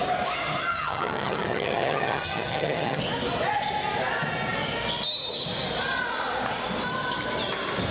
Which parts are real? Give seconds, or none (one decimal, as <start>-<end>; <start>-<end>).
0.0-0.7; 3.0-7.9